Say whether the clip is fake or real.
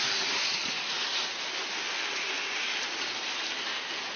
real